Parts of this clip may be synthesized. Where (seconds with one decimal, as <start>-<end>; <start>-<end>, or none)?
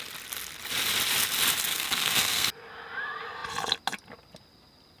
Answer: 1.7-2.5